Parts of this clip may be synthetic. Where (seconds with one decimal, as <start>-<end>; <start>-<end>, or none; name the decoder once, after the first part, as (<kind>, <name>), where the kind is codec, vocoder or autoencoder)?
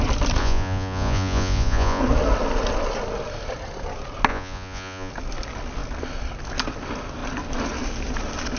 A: 0.4-2.0 (vocoder, Vocos); 4.3-5.1